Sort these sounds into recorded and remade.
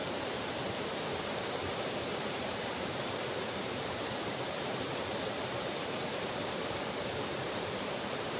remade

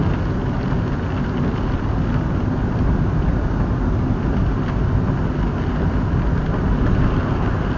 recorded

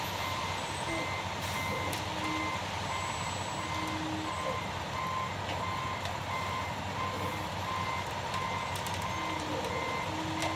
recorded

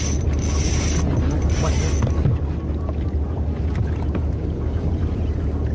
recorded